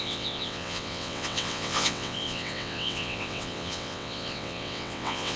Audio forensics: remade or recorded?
remade